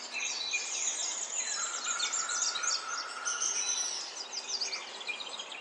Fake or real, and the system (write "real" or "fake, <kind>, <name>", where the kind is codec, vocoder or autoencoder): real